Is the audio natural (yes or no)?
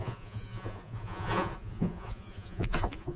no